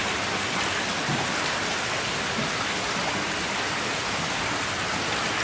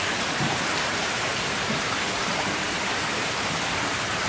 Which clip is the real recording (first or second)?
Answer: first